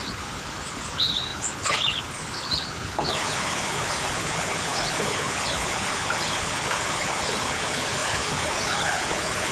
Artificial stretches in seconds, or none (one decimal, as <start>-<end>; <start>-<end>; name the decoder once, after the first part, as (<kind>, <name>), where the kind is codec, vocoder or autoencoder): 0.0-9.5 (codec, HILCodec)